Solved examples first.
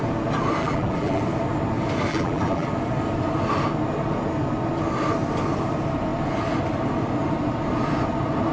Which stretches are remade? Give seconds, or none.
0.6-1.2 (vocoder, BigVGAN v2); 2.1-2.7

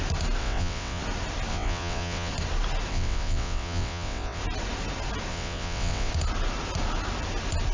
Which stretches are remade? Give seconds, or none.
0.4-1.0 (vocoder, WaveNeXt); 1.5-2.3; 2.9-4.4; 5.3-6.1

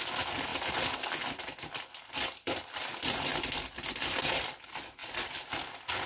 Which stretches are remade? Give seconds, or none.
none

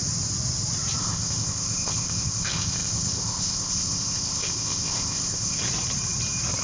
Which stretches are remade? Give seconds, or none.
1.0-5.6 (codec, ZipCodec)

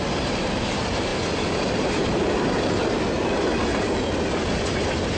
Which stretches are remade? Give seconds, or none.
0.0-3.6 (vocoder, BigVGAN v2); 4.6-5.2

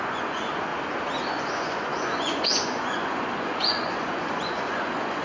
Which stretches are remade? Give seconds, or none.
0.0-0.7 (vocoder, Vocos); 1.3-5.2

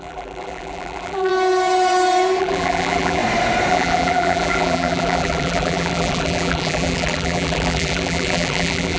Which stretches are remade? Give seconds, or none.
0.0-1.3 (vocoder, BigVGAN v2); 2.4-3.2; 3.7-9.0

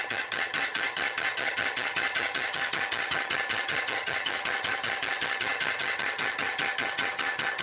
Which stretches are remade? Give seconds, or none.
0.0-7.6 (vocoder, HiFi-GAN)